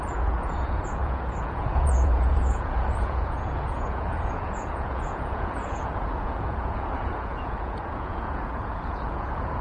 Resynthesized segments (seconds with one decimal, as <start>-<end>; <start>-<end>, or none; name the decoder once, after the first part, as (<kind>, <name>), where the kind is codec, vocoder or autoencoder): 0.0-9.6 (vocoder, Vocos)